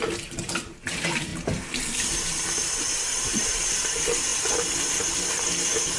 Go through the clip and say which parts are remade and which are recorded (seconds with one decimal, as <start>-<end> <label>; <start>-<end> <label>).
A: 0.0-4.3 remade; 4.3-5.3 recorded; 5.3-6.0 remade

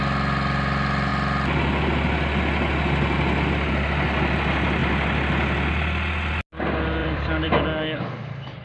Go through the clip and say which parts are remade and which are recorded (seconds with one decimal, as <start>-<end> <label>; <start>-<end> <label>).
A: 0.0-7.0 recorded; 7.0-7.5 remade; 7.5-8.6 recorded